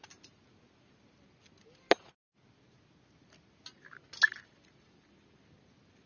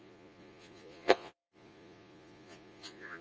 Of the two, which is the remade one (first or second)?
second